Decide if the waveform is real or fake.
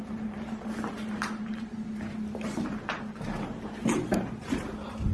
real